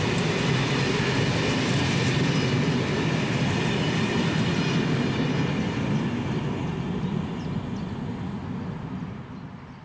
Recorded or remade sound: recorded